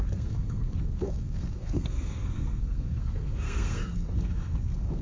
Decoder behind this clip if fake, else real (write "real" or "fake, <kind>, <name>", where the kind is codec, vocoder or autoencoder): fake, codec, SNAC